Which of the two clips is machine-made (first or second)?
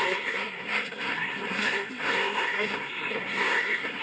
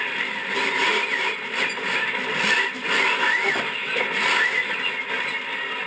first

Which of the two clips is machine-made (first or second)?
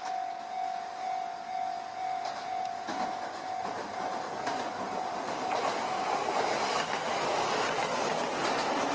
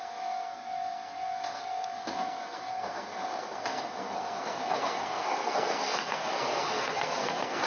second